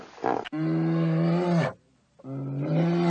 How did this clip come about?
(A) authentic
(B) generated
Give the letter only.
A